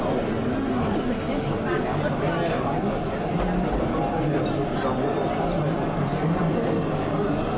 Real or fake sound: real